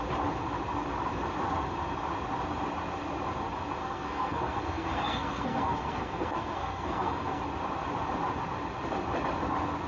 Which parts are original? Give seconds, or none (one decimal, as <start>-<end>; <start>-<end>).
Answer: 0.0-3.8; 7.4-9.9